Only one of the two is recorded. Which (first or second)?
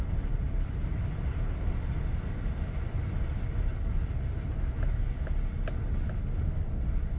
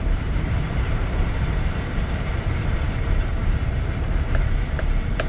first